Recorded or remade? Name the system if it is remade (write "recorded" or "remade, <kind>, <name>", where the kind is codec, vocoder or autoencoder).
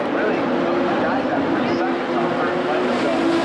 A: recorded